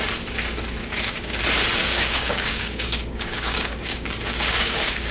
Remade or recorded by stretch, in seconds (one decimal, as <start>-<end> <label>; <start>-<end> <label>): 0.0-0.8 recorded; 0.8-1.4 remade; 1.4-1.8 recorded; 1.8-5.1 remade